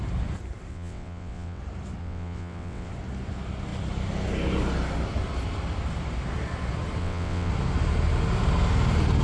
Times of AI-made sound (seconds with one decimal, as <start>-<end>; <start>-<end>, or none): 0.7-1.6; 2.0-2.9; 7.0-7.5

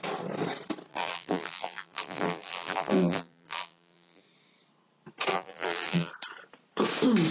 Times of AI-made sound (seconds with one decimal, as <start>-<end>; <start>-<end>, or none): 0.9-4.2; 5.3-6.1

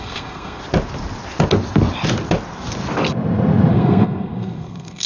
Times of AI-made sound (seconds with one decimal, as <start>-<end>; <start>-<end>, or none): 0.0-0.6; 3.7-5.1

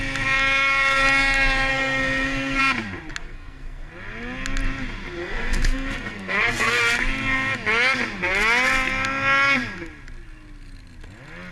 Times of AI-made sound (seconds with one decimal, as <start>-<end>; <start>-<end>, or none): 1.7-2.6; 3.2-3.9; 5.2-6.8

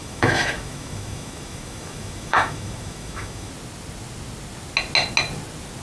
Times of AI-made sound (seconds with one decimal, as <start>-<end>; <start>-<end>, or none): 0.0-3.5

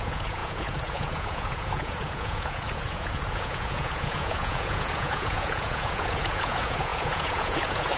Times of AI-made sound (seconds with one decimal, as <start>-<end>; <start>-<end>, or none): 0.0-8.0

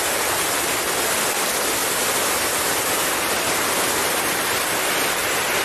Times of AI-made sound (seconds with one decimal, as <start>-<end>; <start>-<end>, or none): none

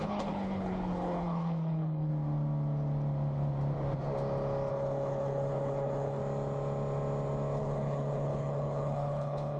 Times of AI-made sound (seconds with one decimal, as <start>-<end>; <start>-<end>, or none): 0.0-2.1; 4.7-6.2; 7.6-9.6